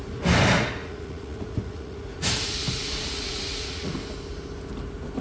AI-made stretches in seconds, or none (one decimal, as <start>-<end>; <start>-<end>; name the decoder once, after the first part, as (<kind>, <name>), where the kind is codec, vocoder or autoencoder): 0.8-3.9 (vocoder, Vocos)